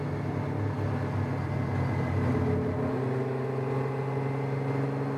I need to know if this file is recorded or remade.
recorded